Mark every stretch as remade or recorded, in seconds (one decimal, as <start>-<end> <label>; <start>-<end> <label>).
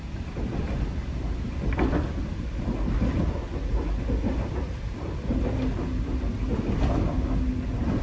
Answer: 0.0-8.0 recorded